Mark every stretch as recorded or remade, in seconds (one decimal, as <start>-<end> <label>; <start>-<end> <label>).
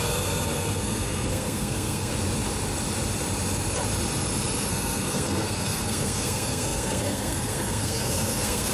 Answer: 0.0-2.1 remade; 2.1-4.7 recorded; 4.7-8.7 remade